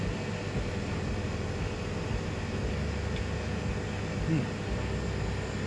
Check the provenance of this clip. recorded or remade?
recorded